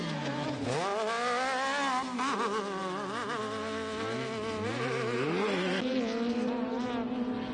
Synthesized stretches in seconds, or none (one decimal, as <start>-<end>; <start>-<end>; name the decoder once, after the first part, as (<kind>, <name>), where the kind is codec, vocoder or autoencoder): none